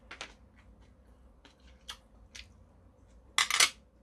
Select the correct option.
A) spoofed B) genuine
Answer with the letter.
B